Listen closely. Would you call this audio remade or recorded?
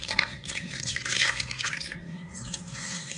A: remade